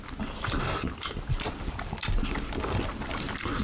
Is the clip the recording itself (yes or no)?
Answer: yes